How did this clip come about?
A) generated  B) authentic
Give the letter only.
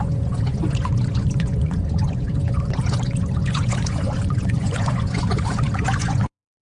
A